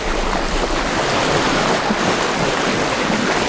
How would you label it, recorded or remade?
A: recorded